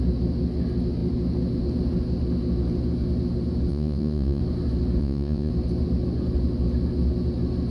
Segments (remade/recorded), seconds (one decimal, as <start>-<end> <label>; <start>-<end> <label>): 0.0-3.7 recorded; 3.7-4.4 remade; 4.4-5.0 recorded; 5.0-5.5 remade; 5.5-7.7 recorded